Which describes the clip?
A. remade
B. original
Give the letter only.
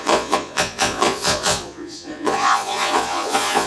A